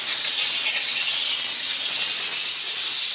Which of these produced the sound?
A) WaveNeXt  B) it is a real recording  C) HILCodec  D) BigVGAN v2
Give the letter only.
A